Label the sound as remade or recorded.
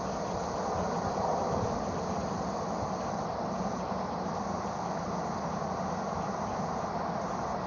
recorded